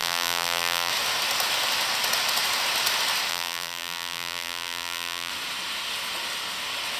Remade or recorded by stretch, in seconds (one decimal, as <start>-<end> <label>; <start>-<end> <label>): 0.0-0.9 remade; 0.9-3.3 recorded; 3.3-5.3 remade; 5.3-7.0 recorded